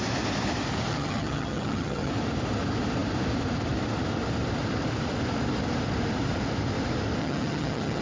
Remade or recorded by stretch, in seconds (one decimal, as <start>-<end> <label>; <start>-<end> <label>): 0.0-0.9 recorded; 0.9-2.1 remade; 2.1-7.2 recorded; 7.2-8.0 remade